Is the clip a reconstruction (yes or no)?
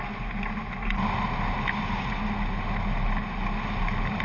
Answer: no